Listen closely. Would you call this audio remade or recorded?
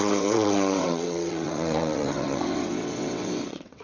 remade